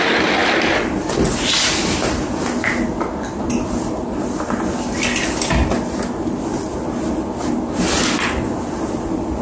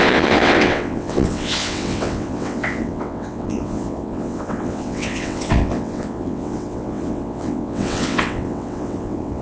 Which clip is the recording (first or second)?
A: first